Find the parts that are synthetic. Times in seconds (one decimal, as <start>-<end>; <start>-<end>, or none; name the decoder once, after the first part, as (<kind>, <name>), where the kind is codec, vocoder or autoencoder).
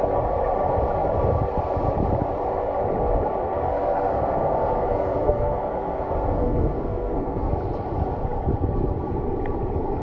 3.4-7.5 (codec, SNAC)